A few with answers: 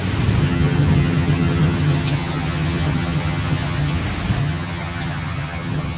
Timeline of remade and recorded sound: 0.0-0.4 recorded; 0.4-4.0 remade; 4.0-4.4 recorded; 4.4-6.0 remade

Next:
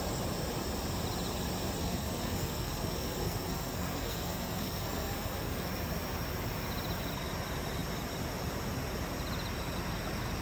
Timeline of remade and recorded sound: 0.0-1.8 recorded; 1.8-5.7 remade; 5.7-10.4 recorded

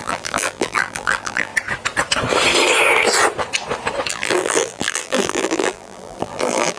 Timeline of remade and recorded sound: 0.0-1.5 remade; 1.5-4.1 recorded; 4.1-6.8 remade

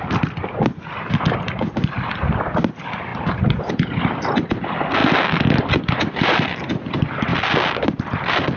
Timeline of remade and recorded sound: 0.0-3.1 recorded; 3.1-3.7 remade; 3.7-8.6 recorded